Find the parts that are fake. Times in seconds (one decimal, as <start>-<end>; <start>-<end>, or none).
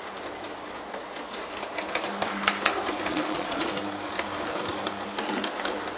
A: 3.1-3.7